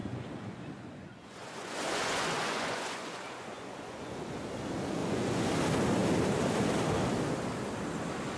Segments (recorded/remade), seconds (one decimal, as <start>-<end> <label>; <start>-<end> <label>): 0.0-4.4 remade; 4.4-5.0 recorded; 5.0-5.5 remade; 5.5-8.4 recorded

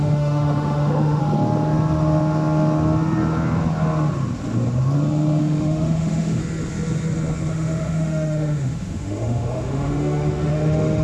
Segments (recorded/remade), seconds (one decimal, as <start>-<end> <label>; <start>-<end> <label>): 0.0-1.2 remade; 1.2-5.4 recorded; 5.4-6.4 remade; 6.4-7.5 recorded; 7.5-11.0 remade

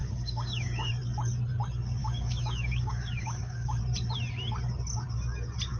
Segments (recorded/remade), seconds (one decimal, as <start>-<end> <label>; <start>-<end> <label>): 0.0-0.9 remade; 0.9-2.0 recorded; 2.0-3.8 remade; 3.8-5.8 recorded

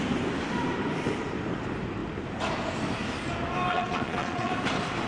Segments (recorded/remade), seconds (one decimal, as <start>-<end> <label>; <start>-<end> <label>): 0.0-3.7 recorded; 3.7-4.5 remade; 4.5-5.1 recorded

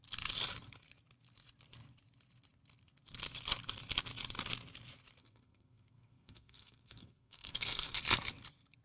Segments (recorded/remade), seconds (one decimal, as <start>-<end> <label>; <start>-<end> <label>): 0.0-5.2 recorded; 5.2-8.0 remade; 8.0-8.8 recorded

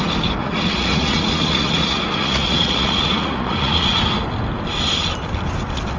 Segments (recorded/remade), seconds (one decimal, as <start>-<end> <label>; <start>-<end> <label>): 0.0-0.4 recorded; 0.4-4.0 remade; 4.0-6.0 recorded

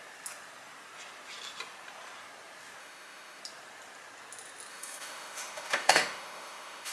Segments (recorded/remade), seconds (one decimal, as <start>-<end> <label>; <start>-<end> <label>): 0.0-2.8 recorded; 2.8-3.4 remade; 3.4-4.7 recorded; 4.7-6.9 remade

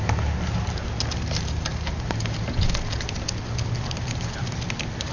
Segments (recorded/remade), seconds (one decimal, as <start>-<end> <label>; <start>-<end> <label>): 0.0-5.1 recorded